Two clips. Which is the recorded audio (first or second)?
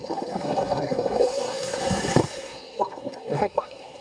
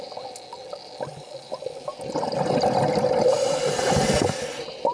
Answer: second